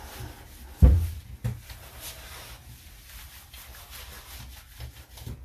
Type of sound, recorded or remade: recorded